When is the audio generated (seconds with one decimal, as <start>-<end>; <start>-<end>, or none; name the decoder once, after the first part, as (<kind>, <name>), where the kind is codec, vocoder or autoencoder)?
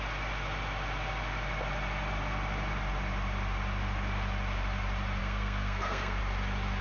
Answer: 5.2-6.2 (codec, SNAC)